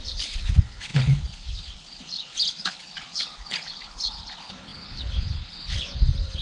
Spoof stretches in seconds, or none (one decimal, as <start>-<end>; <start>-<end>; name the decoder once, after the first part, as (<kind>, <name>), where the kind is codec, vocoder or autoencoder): 0.0-6.4 (codec, HILCodec)